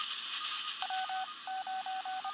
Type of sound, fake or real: real